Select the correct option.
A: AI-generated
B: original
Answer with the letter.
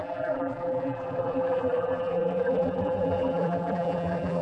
A